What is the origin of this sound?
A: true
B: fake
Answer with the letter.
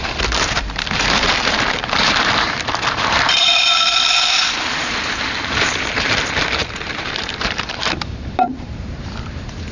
B